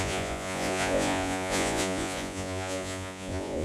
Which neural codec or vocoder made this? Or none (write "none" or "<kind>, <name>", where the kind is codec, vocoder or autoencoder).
vocoder, Vocos